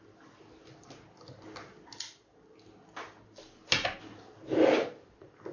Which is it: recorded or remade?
recorded